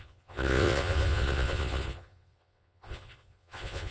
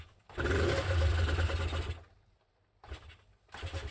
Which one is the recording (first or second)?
second